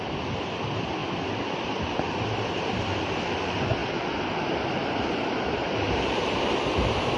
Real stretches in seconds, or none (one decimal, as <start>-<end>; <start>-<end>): 0.0-7.2